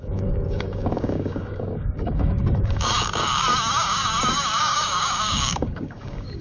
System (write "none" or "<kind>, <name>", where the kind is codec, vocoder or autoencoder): codec, DAC